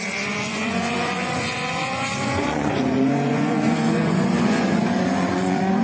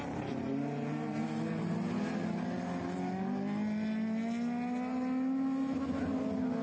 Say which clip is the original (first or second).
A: second